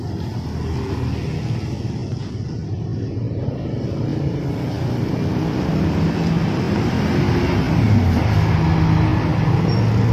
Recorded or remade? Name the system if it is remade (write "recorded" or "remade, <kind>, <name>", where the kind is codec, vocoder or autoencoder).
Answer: recorded